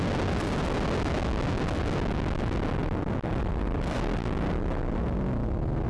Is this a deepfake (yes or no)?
no